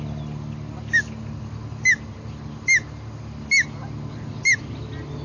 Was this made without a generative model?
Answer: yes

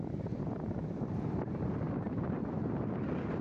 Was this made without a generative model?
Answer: yes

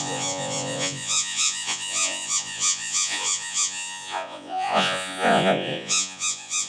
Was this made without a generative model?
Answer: no